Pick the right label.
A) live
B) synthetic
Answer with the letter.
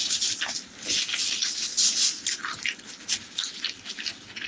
A